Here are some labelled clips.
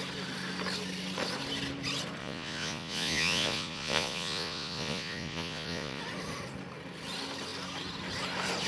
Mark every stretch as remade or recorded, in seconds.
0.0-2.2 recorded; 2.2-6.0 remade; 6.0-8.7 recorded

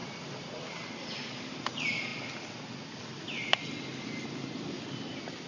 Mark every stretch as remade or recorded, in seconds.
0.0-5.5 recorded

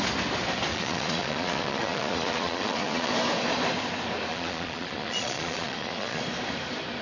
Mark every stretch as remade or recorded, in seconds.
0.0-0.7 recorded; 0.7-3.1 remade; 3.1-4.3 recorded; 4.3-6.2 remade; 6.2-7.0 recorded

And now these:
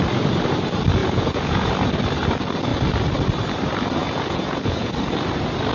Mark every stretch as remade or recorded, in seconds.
0.0-1.0 recorded; 1.0-1.7 remade; 1.7-4.0 recorded; 4.0-4.9 remade; 4.9-5.7 recorded